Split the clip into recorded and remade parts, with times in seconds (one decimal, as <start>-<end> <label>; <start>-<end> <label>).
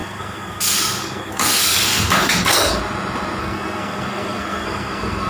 0.0-2.8 remade; 2.8-3.4 recorded; 3.4-5.3 remade